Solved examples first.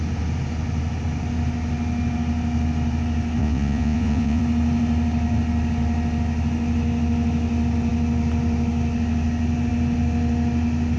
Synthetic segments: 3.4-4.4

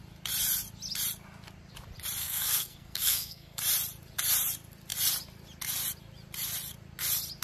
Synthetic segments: 2.2-3.6

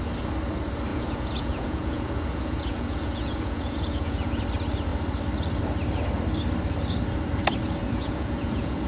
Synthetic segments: 0.9-4.4; 7.8-8.9

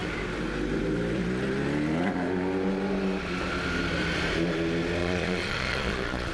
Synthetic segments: 5.0-6.3